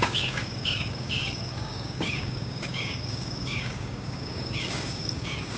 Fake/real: fake